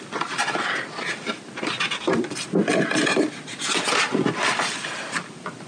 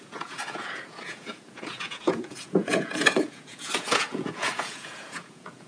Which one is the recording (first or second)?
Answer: first